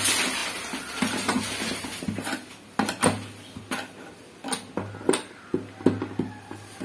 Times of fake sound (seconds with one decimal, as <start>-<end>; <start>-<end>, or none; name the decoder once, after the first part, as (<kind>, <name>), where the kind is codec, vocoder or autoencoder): none